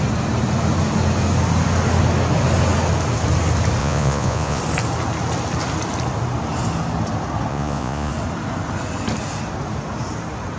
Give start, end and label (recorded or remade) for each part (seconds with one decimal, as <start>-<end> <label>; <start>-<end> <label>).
0.0-3.8 recorded; 3.8-4.6 remade; 4.6-7.5 recorded; 7.5-8.1 remade; 8.1-10.6 recorded